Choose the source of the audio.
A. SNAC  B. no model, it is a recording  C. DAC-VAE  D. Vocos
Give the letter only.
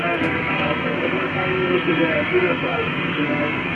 A